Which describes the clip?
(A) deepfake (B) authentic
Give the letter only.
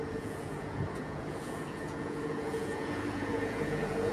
A